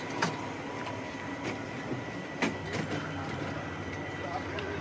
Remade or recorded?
remade